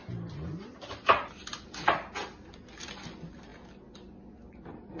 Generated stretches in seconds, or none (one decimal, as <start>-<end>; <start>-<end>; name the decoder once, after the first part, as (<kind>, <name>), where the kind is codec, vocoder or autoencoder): none